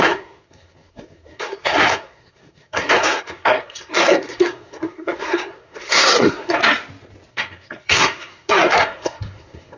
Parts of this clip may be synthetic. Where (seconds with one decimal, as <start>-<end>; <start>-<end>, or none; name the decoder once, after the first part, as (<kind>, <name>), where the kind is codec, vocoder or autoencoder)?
0.0-6.6 (codec, SNAC); 7.3-9.8